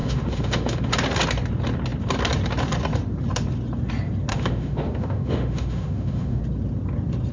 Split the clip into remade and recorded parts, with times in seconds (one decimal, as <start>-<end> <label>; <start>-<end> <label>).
0.0-0.9 remade; 0.9-4.3 recorded; 4.3-6.4 remade; 6.4-7.3 recorded